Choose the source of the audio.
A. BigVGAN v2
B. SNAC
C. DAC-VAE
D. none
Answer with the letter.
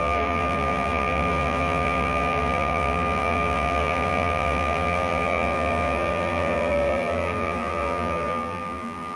A